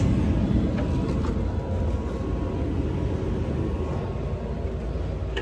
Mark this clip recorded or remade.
recorded